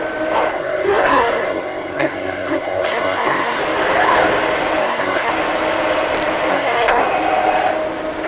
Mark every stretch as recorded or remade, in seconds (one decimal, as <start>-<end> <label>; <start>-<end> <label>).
0.0-0.5 recorded; 0.5-3.6 remade; 3.6-4.8 recorded; 4.8-5.3 remade; 5.3-6.5 recorded; 6.5-7.0 remade; 7.0-8.3 recorded